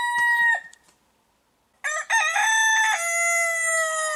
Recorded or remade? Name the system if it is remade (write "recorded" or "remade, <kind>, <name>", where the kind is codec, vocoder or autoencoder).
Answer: recorded